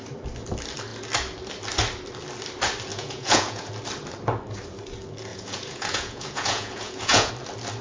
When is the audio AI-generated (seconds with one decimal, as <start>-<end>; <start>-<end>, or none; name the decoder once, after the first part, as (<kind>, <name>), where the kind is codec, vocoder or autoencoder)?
2.9-3.7 (vocoder, Vocos); 5.3-7.3